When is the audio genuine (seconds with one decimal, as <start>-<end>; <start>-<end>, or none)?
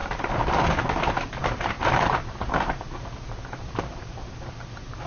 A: 0.0-1.4; 4.5-5.1